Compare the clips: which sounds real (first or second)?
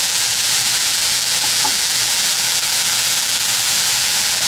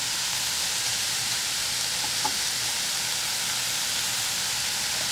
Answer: second